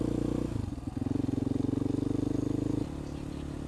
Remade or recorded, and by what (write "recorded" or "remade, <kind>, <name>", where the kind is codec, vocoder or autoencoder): recorded